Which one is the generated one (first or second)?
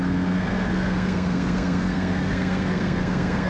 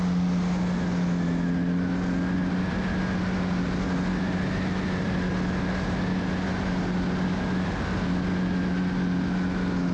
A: first